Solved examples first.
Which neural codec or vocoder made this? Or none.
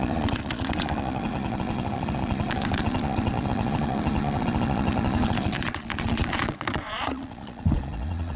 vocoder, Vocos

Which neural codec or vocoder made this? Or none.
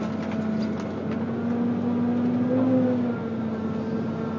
none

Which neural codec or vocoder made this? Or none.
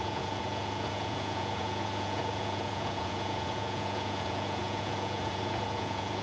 vocoder, Vocos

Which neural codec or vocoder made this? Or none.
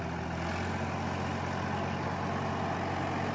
none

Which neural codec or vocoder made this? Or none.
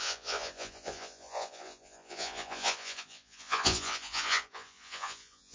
vocoder, Vocos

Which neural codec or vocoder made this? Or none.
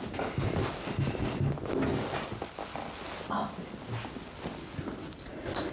none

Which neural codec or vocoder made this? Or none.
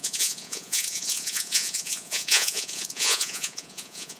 vocoder, Vocos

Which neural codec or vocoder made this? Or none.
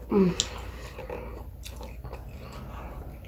none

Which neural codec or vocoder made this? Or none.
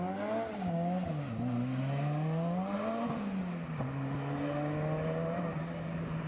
none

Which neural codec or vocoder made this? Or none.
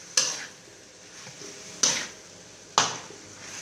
none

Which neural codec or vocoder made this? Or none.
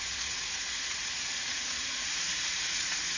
vocoder, Vocos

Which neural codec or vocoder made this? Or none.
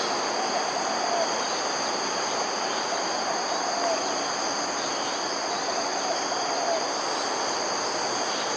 none